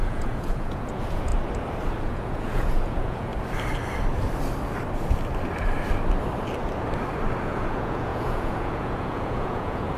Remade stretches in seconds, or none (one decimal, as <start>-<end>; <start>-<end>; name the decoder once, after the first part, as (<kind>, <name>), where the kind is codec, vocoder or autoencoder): 0.0-1.3 (vocoder, Vocos); 2.0-3.3; 7.4-10.0

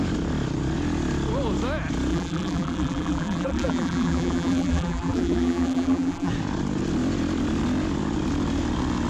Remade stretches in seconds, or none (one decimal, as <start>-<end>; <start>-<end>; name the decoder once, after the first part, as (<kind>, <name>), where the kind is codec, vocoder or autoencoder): 2.1-6.3 (vocoder, BigVGAN v2)

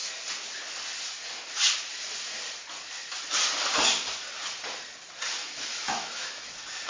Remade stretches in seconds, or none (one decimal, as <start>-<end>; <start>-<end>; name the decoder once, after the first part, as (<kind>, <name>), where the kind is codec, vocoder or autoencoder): 5.4-6.5 (autoencoder, DAC-VAE)

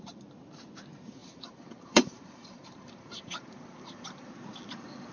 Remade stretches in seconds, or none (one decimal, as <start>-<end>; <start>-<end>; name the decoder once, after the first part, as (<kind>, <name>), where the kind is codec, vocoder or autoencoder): 1.2-4.3 (vocoder, BigVGAN v2)

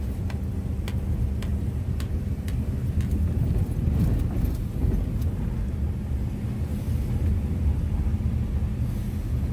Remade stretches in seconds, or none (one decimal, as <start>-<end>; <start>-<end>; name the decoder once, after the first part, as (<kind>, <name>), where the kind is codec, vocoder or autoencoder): none

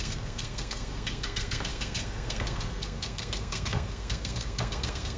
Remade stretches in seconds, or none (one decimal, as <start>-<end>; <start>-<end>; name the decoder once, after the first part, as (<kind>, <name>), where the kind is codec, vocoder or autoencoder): 0.0-5.2 (codec, SNAC)

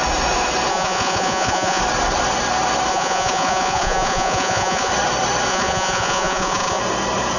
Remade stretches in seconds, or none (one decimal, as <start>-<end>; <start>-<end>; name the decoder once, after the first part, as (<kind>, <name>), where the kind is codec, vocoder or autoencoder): 0.7-1.8 (vocoder, Vocos); 2.9-4.9; 5.5-6.8

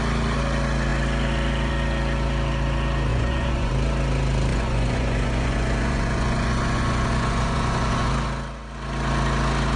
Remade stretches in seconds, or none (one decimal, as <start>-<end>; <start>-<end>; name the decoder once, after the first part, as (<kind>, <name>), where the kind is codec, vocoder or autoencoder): 3.1-3.7 (vocoder, Vocos); 4.5-8.1